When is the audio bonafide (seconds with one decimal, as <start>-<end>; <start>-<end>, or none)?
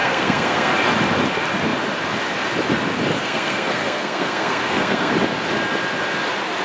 0.7-3.2; 5.1-6.6